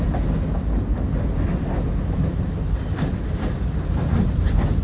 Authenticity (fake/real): real